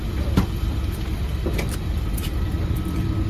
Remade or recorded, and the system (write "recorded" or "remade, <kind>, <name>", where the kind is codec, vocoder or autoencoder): remade, vocoder, BigVGAN v2